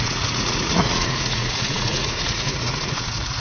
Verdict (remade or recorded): remade